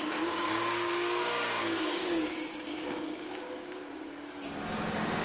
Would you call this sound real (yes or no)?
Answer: no